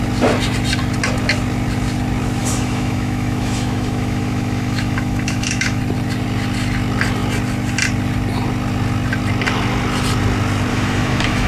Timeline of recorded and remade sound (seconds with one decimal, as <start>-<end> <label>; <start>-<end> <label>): 0.0-2.4 recorded; 2.4-5.8 remade; 5.8-10.7 recorded; 10.7-11.5 remade